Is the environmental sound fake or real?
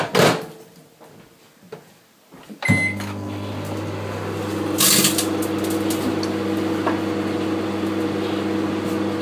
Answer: real